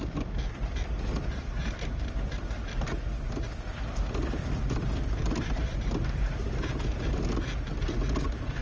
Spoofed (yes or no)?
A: no